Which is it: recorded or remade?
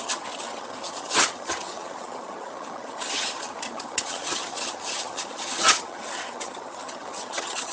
remade